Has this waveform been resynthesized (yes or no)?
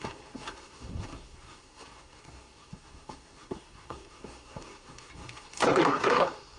yes